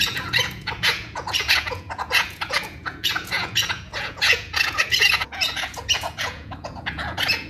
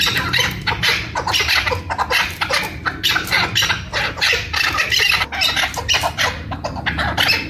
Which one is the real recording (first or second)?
second